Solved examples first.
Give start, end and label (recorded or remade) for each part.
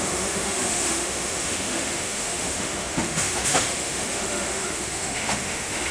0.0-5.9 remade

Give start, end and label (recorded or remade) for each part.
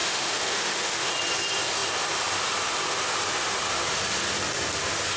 0.0-1.1 remade; 1.1-5.2 recorded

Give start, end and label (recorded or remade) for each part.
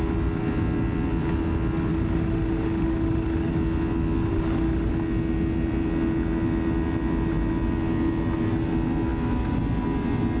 0.0-1.9 recorded; 1.9-3.5 remade; 3.5-4.3 recorded; 4.3-4.9 remade; 4.9-10.4 recorded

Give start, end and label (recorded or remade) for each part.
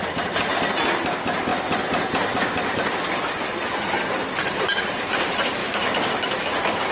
0.0-5.6 recorded; 5.6-6.9 remade